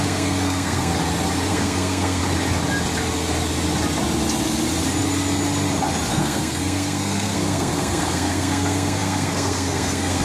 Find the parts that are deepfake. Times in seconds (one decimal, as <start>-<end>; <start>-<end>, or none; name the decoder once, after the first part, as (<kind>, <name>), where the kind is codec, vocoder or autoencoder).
0.0-0.9 (codec, SNAC); 1.5-2.2; 6.1-10.2

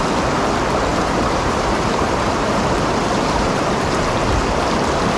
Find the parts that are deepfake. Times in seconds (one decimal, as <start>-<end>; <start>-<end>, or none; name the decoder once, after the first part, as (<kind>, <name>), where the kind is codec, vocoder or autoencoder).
0.9-4.0 (vocoder, BigVGAN v2)

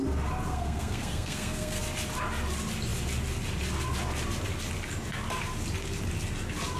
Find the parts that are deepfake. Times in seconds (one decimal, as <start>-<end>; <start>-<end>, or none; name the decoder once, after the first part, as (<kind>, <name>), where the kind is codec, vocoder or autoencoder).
0.5-1.8 (codec, SNAC)

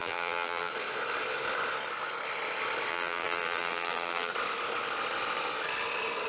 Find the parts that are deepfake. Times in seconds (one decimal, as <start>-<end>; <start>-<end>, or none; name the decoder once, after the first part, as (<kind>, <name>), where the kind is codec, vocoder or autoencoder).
0.0-0.7 (vocoder, BigVGAN v2); 2.9-4.3

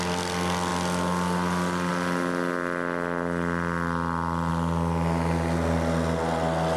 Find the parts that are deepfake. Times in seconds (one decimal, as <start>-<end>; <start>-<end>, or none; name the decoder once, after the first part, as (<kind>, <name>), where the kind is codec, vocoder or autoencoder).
none